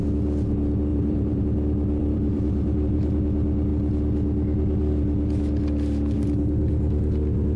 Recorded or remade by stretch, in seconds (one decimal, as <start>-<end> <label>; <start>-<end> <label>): 0.0-0.9 recorded; 0.9-1.4 remade; 1.4-2.0 recorded; 2.0-3.2 remade; 3.2-7.6 recorded

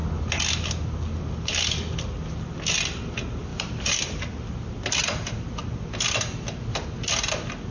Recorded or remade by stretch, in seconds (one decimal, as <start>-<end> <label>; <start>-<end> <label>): 0.0-3.5 recorded; 3.5-4.2 remade; 4.2-7.7 recorded

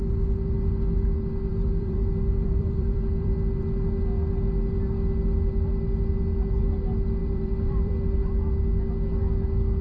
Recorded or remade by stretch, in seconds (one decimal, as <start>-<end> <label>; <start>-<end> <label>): 0.0-1.5 recorded; 1.5-3.3 remade; 3.3-7.2 recorded; 7.2-7.9 remade; 7.9-9.8 recorded

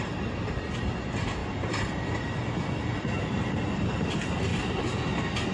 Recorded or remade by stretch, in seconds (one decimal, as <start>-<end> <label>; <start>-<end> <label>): 0.0-1.4 remade; 1.4-3.0 recorded; 3.0-4.5 remade; 4.5-5.5 recorded